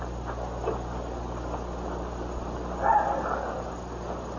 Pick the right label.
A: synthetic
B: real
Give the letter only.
B